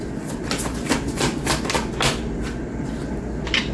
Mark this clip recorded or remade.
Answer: recorded